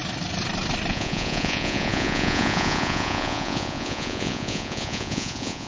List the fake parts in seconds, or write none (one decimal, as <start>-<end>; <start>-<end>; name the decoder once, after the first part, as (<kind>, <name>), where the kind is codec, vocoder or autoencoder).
0.9-5.7 (vocoder, Vocos)